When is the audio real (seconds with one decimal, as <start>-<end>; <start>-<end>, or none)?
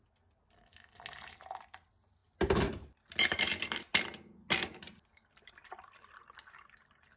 0.0-7.2